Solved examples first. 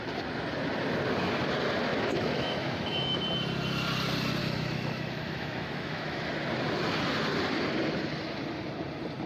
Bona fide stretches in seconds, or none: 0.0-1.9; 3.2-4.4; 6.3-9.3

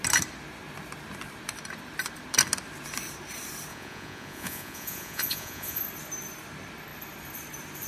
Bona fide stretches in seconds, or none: 0.0-3.7; 5.8-7.9